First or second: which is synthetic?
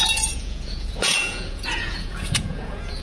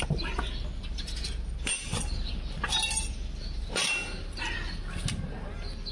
first